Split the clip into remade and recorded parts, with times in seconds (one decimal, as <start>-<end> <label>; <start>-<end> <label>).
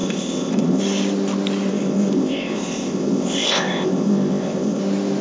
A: 0.0-0.8 remade; 0.8-1.7 recorded; 1.7-4.8 remade; 4.8-5.2 recorded